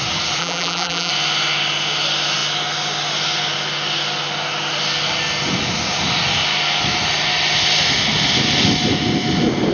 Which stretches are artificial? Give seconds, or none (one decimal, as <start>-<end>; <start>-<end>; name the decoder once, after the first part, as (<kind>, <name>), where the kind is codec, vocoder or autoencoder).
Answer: 0.4-1.1 (vocoder, BigVGAN v2)